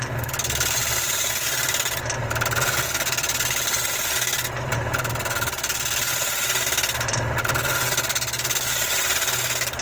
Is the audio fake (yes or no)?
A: no